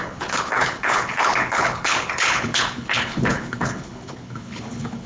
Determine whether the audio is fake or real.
fake